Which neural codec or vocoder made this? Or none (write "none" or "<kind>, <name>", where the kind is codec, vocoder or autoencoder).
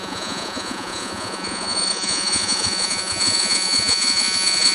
vocoder, Vocos